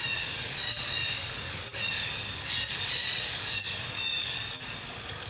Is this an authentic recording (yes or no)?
no